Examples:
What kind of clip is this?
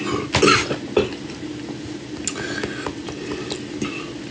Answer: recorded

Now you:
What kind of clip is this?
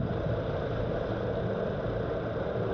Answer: recorded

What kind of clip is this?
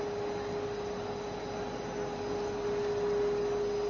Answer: recorded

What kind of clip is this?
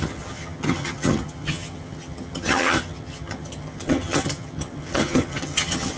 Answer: remade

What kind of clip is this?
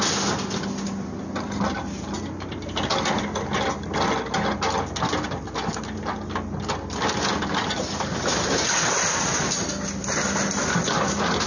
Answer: recorded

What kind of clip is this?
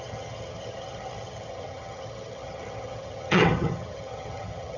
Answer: remade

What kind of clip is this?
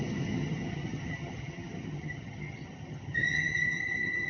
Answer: remade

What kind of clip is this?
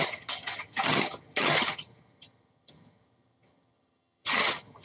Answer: remade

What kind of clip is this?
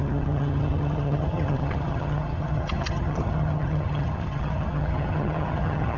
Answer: remade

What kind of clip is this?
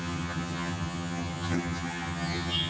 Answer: remade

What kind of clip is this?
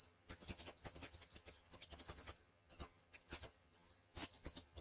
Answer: remade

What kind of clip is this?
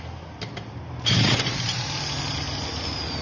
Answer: recorded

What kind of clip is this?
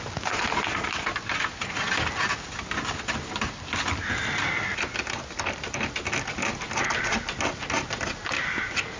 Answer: recorded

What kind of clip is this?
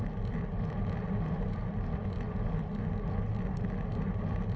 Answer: recorded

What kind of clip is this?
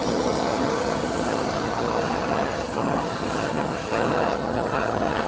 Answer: remade